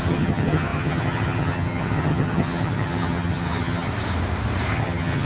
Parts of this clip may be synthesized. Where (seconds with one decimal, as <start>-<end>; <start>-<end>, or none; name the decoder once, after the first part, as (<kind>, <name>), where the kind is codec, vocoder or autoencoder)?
0.0-3.9 (vocoder, HiFi-GAN); 4.7-5.3